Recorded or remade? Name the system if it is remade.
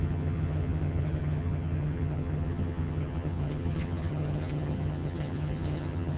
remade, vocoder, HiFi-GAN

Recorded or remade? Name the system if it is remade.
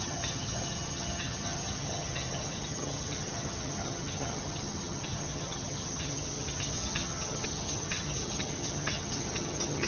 remade, vocoder, HiFi-GAN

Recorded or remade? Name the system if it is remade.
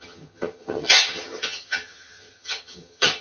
remade, vocoder, HiFi-GAN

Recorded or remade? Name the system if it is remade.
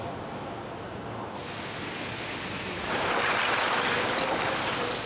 recorded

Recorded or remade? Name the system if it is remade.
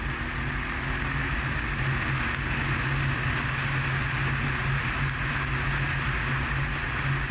recorded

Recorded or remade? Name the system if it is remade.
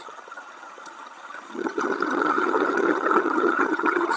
remade, vocoder, HiFi-GAN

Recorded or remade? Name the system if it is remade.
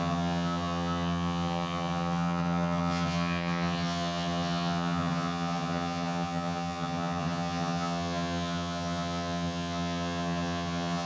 remade, vocoder, HiFi-GAN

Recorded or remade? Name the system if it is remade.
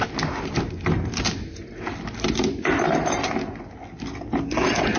recorded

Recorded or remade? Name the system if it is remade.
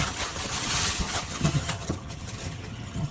remade, vocoder, HiFi-GAN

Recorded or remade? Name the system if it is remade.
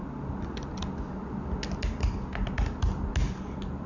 recorded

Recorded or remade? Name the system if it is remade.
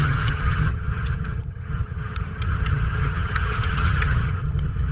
remade, vocoder, HiFi-GAN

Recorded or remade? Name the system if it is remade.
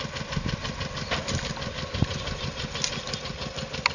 recorded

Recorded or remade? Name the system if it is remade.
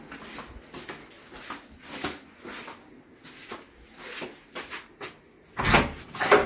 recorded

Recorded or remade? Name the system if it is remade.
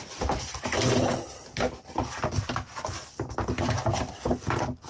recorded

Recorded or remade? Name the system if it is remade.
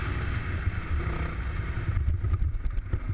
recorded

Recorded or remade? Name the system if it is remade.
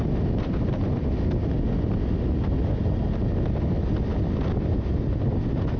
recorded